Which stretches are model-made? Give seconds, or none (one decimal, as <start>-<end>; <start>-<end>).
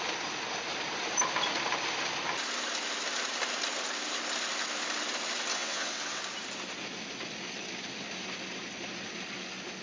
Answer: 5.5-6.2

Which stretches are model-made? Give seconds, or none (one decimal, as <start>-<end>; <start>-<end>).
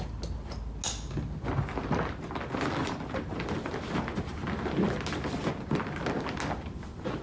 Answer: 2.8-3.4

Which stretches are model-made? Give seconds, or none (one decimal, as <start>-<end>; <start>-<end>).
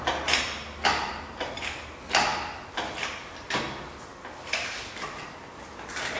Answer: 0.9-1.5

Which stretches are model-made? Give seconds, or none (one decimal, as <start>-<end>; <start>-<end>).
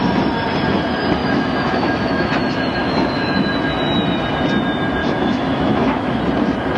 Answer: 1.2-2.3; 2.8-3.5; 5.0-6.2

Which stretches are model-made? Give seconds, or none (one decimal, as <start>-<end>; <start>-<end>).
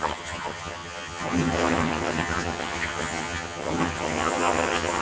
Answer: 0.0-5.0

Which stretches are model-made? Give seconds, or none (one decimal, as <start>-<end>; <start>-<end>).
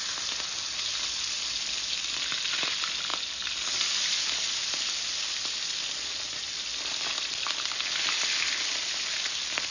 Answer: none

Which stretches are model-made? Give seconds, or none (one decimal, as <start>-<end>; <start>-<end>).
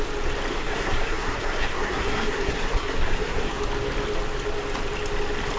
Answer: 0.5-3.6